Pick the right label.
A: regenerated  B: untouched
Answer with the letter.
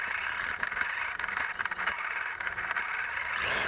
B